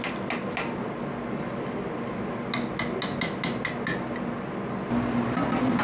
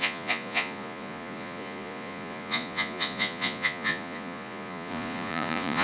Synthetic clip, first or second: second